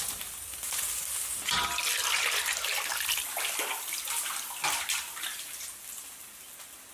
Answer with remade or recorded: recorded